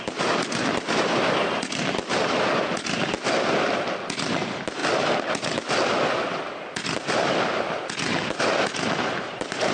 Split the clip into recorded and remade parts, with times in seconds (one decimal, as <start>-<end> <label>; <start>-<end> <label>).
0.0-9.7 recorded